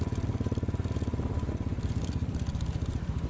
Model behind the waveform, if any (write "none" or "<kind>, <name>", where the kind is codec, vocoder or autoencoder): vocoder, BigVGAN v2